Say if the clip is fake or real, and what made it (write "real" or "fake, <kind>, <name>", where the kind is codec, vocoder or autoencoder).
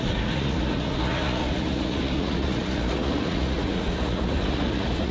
fake, vocoder, Vocos